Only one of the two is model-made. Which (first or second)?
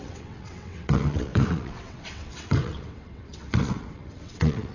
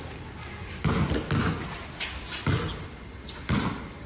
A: first